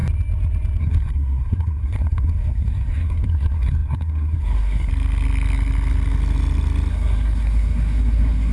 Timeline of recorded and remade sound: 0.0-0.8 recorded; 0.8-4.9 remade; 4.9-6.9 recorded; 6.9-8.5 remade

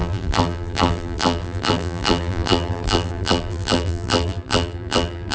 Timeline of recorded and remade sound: 0.0-5.3 remade

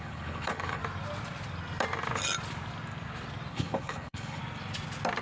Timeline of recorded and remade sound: 0.0-0.8 remade; 0.8-3.5 recorded; 3.5-4.4 remade; 4.4-5.2 recorded

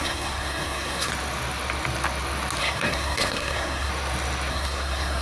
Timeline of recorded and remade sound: 0.0-1.1 remade; 1.1-2.6 recorded; 2.6-3.9 remade; 3.9-4.5 recorded; 4.5-5.2 remade

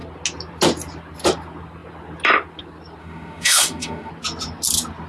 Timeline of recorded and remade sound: 0.0-3.0 recorded; 3.0-4.1 remade; 4.1-5.1 recorded